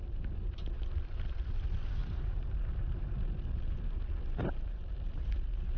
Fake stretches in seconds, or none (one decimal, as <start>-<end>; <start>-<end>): 2.0-3.1